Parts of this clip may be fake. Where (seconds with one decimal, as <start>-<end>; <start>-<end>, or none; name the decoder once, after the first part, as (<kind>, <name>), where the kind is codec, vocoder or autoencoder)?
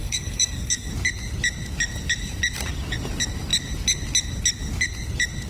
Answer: 0.0-0.9 (codec, SNAC)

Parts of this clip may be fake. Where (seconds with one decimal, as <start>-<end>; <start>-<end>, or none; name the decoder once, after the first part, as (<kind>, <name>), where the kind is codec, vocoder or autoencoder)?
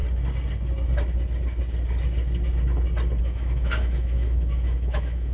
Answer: 3.2-5.3 (autoencoder, DAC-VAE)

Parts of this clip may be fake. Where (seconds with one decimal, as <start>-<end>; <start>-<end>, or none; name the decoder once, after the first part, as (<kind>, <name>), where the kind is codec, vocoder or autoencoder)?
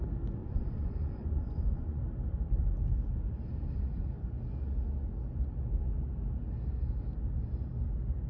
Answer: 0.4-2.0 (vocoder, Vocos)